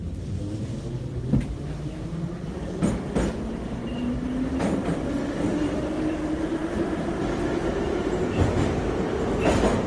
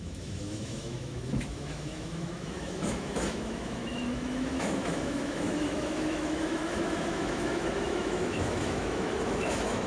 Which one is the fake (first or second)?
second